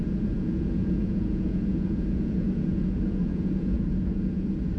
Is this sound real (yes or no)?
no